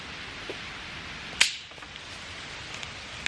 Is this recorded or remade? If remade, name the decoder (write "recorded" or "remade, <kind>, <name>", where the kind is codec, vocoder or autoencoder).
recorded